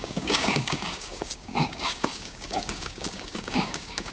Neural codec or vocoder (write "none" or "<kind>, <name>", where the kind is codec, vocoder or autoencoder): codec, DAC